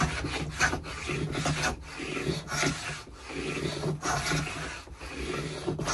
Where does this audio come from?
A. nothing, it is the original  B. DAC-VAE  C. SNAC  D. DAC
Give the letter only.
A